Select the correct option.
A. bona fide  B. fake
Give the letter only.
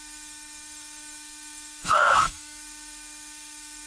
B